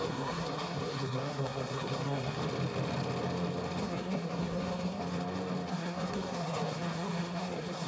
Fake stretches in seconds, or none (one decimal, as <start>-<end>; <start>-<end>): 0.0-2.4; 3.8-5.0; 5.7-7.9